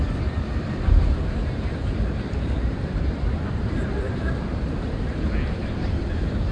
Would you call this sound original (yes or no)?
no